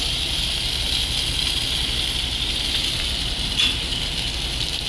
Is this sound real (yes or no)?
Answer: yes